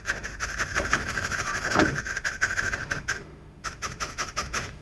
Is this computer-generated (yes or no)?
yes